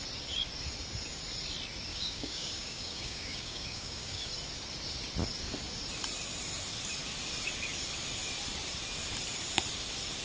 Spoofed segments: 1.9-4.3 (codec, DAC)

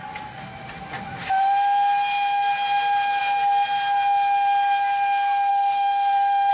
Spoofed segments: 5.5-6.5 (codec, DAC)

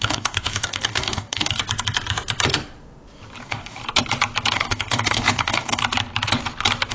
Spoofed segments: 0.0-1.6 (codec, DAC); 3.4-3.8; 4.5-5.8

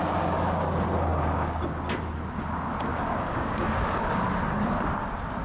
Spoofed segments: 1.1-1.6 (codec, DAC); 2.9-4.2

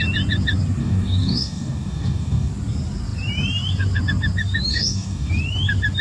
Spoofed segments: 0.8-2.5 (codec, DAC); 4.7-5.3

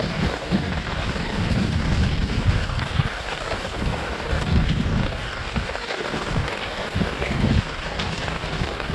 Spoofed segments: 0.0-8.9 (codec, DAC)

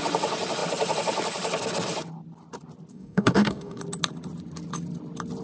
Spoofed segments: 2.9-3.8 (codec, DAC)

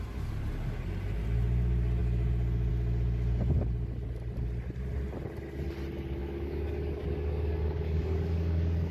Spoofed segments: 6.2-8.9 (codec, DAC)